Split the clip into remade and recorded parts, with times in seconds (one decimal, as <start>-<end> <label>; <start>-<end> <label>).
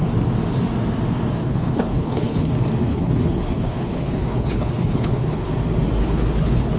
0.0-1.4 recorded; 1.4-2.5 remade; 2.5-2.9 recorded; 2.9-5.5 remade; 5.5-6.0 recorded; 6.0-6.8 remade